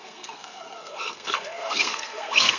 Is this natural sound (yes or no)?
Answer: no